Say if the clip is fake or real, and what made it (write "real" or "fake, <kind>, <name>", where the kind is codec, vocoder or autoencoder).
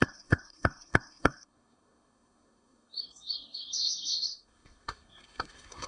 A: fake, codec, SNAC